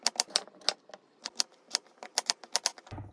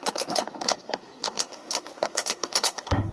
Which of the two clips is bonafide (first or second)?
first